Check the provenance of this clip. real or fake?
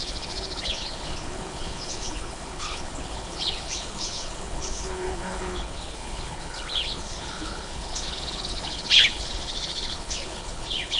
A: fake